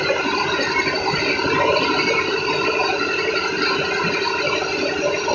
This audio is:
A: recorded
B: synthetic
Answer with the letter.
A